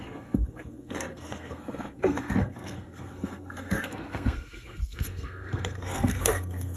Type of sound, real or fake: fake